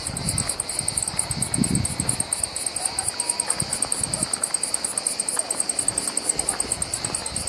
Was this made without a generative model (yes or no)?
yes